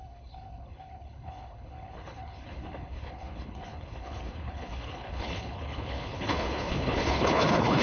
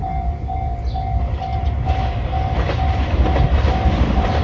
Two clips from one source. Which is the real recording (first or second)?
second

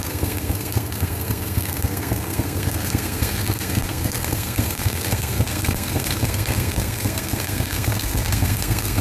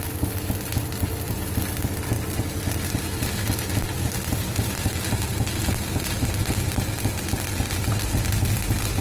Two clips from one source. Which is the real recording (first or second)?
second